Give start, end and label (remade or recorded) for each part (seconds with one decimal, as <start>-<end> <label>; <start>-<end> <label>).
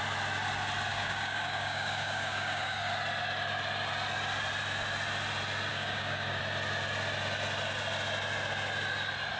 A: 0.0-0.9 recorded; 0.9-2.9 remade; 2.9-5.7 recorded; 5.7-6.4 remade; 6.4-9.4 recorded